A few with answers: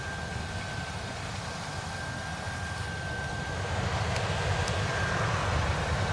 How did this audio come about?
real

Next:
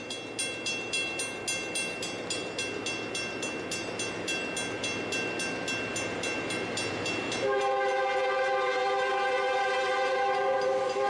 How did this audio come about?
real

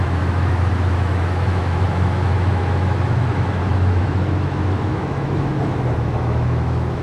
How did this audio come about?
fake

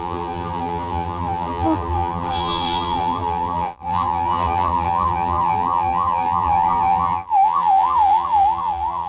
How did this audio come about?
fake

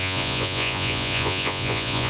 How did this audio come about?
fake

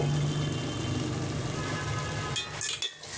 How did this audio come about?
real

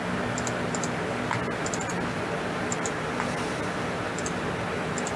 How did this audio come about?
real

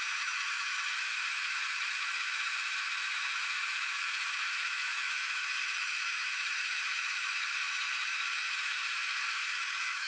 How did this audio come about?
fake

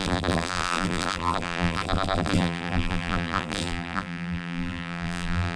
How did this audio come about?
fake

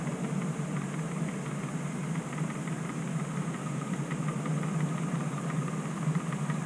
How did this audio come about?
real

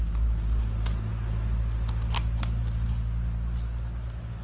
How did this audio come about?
real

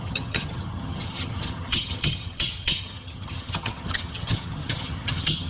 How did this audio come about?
fake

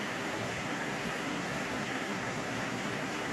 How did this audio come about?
fake